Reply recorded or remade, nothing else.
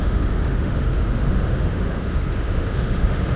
remade